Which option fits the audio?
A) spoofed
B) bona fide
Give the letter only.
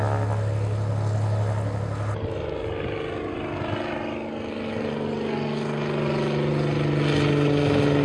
B